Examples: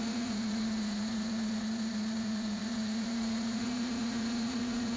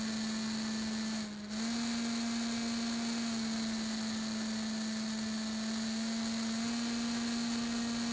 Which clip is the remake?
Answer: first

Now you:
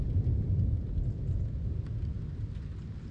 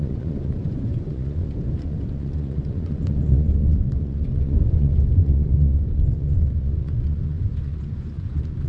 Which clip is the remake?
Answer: second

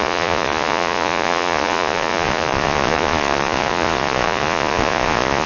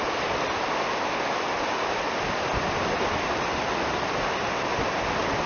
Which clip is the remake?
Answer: first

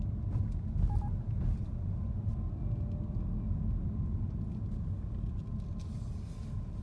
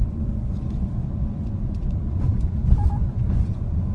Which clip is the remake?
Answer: second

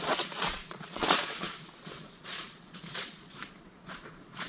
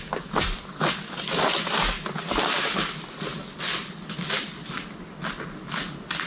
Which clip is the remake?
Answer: first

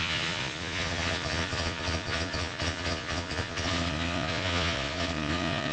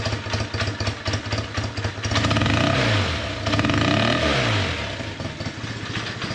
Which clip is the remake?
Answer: first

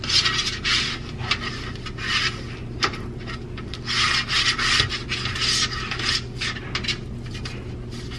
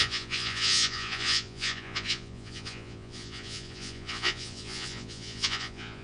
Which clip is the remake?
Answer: second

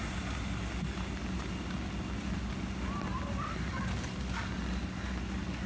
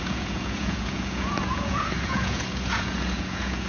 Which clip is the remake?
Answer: second